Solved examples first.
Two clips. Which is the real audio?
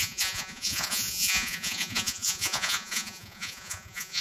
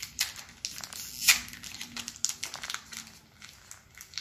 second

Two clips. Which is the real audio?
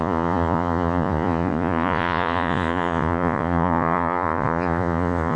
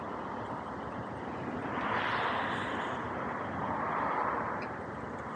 second